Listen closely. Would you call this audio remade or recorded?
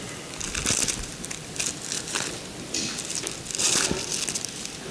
recorded